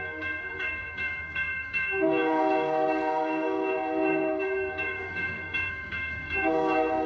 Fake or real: fake